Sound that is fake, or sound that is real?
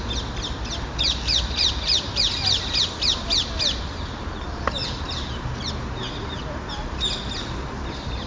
real